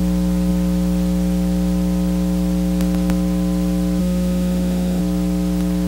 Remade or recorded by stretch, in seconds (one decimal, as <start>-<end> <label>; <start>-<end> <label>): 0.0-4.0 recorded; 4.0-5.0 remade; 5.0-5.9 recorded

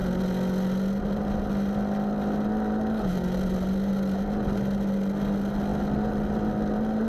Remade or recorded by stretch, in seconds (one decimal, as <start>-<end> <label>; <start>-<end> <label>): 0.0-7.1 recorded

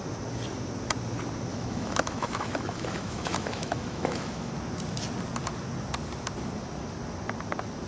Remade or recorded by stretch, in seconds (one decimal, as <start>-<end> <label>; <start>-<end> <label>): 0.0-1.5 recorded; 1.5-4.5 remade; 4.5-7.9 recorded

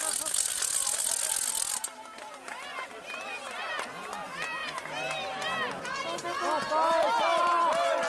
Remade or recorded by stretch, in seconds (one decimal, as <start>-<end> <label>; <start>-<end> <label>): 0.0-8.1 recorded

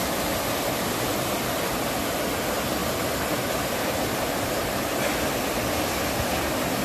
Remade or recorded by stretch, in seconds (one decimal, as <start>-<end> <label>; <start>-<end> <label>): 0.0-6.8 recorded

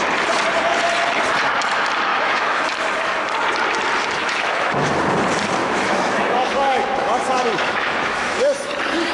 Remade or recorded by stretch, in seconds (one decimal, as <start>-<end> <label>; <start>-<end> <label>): 0.0-2.1 recorded; 2.1-2.6 remade; 2.6-4.2 recorded; 4.2-4.9 remade; 4.9-5.6 recorded; 5.6-8.7 remade; 8.7-9.1 recorded